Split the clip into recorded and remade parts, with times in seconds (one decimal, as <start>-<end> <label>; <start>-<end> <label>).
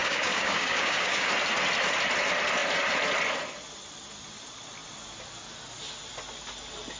0.0-1.3 remade; 1.3-7.0 recorded